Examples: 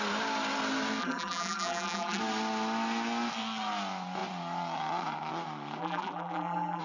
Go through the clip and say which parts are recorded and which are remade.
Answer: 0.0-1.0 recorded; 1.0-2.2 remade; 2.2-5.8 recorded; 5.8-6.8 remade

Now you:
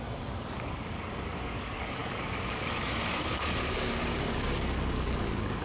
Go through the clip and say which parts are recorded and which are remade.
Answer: 0.0-5.6 remade

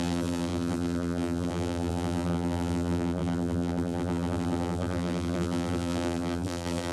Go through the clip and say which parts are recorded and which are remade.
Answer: 0.0-6.9 remade

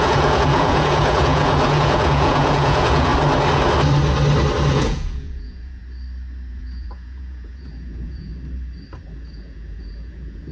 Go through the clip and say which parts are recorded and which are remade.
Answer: 0.0-3.1 remade; 3.1-4.7 recorded; 4.7-5.8 remade; 5.8-6.5 recorded; 6.5-8.3 remade; 8.3-9.2 recorded; 9.2-10.5 remade

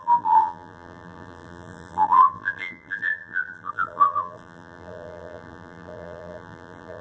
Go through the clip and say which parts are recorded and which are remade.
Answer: 0.0-7.0 remade

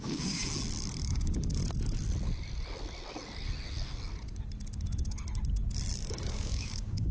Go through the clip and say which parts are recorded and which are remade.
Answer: 0.0-0.4 remade; 0.4-1.0 recorded; 1.0-1.6 remade; 1.6-5.9 recorded; 5.9-7.1 remade

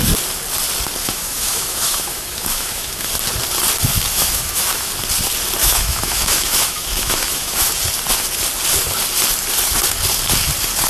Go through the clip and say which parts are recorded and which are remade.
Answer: 0.0-1.0 recorded; 1.0-3.1 remade; 3.1-4.1 recorded; 4.1-4.9 remade; 4.9-5.6 recorded; 5.6-7.7 remade; 7.7-10.9 recorded

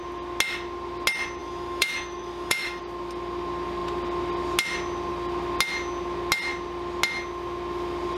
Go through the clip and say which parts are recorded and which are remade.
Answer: 0.0-1.4 recorded; 1.4-2.8 remade; 2.8-8.2 recorded